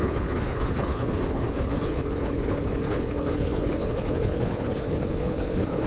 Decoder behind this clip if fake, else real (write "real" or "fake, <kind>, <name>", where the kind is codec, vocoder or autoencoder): fake, codec, HILCodec